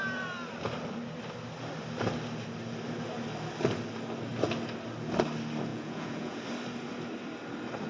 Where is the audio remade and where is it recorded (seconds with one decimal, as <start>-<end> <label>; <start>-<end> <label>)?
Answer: 0.0-5.7 recorded; 5.7-6.4 remade; 6.4-7.9 recorded